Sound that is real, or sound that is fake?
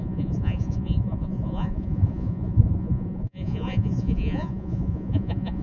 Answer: fake